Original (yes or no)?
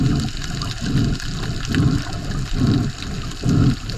yes